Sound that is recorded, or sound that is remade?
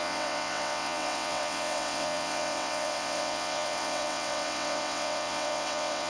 remade